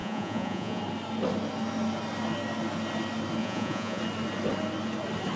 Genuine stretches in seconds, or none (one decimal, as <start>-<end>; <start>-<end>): 0.8-3.4; 4.0-5.4